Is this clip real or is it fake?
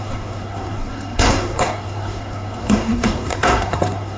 fake